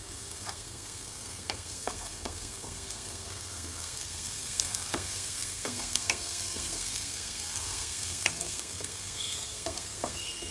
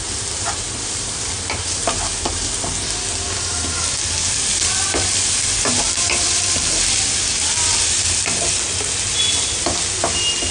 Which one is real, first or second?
second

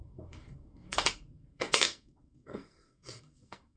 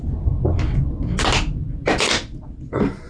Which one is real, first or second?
second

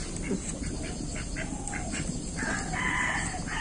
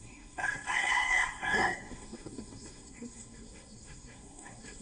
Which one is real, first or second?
first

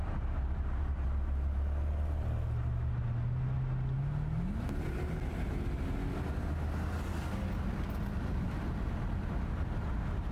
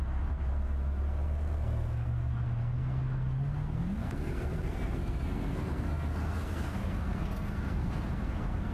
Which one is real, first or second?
first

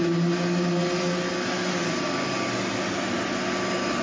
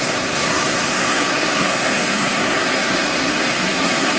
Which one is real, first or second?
first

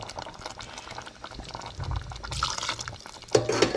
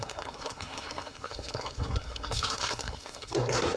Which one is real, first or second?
first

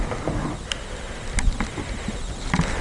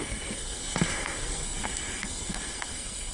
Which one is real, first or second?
first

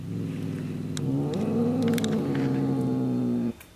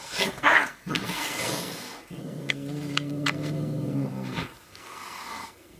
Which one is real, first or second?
first